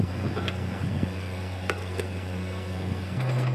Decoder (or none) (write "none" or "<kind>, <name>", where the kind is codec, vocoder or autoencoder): codec, SNAC